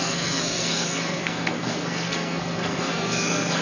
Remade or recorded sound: remade